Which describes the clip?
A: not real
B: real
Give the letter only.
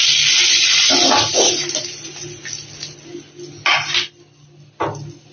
B